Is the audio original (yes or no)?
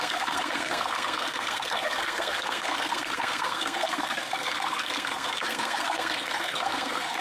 no